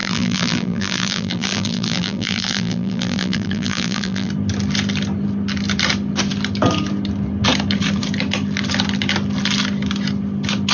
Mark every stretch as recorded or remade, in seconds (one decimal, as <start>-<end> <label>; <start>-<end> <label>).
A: 0.0-4.3 remade; 4.3-10.7 recorded